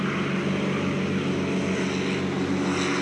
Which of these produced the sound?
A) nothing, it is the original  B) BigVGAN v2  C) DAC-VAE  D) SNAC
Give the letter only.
A